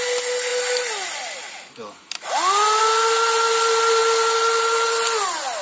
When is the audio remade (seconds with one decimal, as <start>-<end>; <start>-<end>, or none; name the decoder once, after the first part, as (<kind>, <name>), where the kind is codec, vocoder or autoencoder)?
none